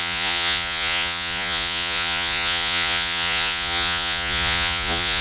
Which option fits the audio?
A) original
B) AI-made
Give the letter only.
B